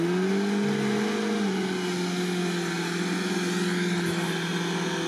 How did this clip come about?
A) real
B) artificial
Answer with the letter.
A